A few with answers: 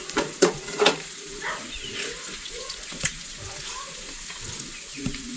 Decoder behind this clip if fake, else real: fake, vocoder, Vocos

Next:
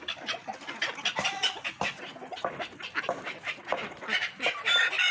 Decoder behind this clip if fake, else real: real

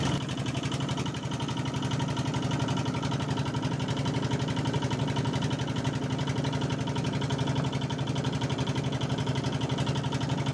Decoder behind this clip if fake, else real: real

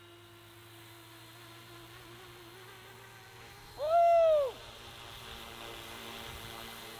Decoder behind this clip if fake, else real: real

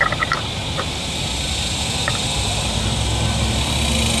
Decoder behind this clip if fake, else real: real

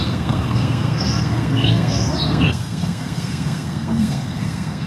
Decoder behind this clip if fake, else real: fake, codec, SNAC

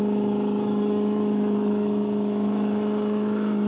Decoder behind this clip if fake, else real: fake, autoencoder, DAC-VAE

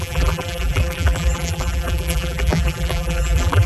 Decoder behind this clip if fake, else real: fake, vocoder, BigVGAN v2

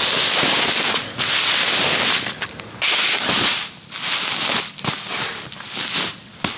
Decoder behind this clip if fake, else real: real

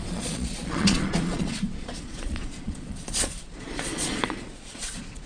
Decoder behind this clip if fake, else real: fake, vocoder, Vocos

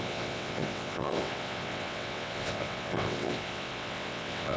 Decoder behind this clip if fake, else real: fake, vocoder, WaveNeXt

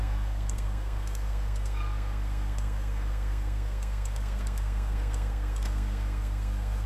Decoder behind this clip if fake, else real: fake, codec, SNAC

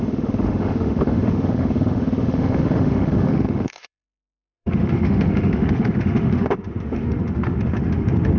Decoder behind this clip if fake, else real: fake, autoencoder, DAC-VAE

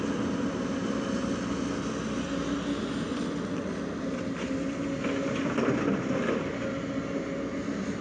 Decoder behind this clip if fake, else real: real